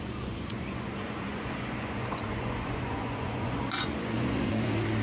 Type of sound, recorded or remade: remade